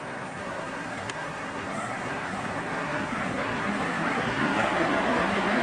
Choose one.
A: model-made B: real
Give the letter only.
A